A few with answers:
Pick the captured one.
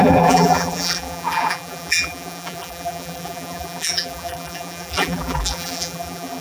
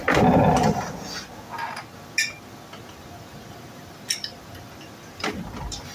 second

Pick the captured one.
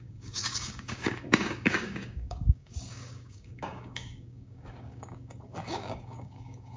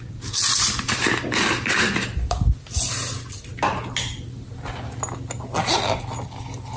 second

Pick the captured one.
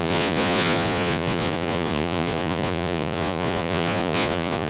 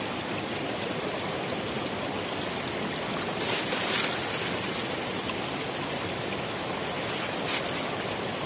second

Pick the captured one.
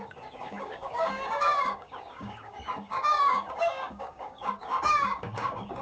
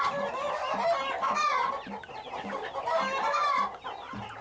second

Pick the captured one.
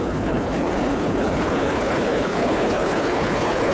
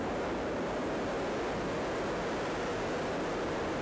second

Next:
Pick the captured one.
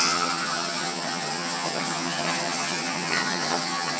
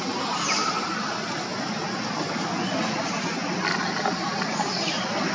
second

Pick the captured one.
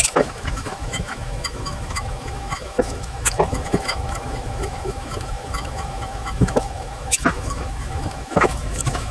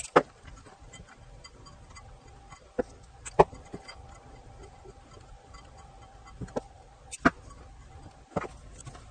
second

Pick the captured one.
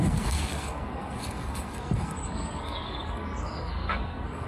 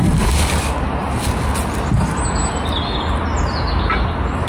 second